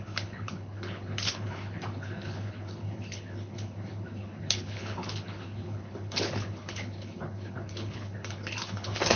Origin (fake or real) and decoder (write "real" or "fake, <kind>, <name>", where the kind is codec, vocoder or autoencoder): fake, codec, HILCodec